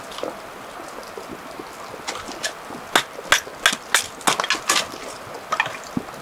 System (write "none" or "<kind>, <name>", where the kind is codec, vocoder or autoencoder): none